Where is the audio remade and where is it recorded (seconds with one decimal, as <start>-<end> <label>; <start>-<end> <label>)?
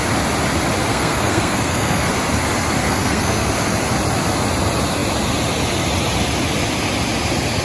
0.0-0.9 recorded; 0.9-2.1 remade; 2.1-2.8 recorded; 2.8-3.5 remade; 3.5-7.6 recorded